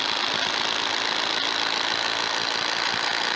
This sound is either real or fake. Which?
real